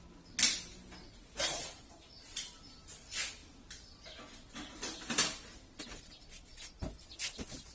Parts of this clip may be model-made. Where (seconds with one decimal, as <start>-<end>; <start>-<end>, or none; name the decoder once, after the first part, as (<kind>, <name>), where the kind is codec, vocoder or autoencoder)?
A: 1.0-2.6 (vocoder, BigVGAN v2)